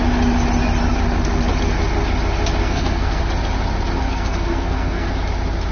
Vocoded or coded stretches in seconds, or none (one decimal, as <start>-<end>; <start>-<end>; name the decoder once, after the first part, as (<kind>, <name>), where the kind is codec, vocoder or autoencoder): 2.6-3.2 (codec, SNAC); 4.0-5.1